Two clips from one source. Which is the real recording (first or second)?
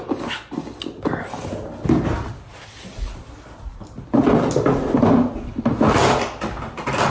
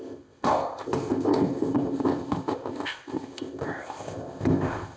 first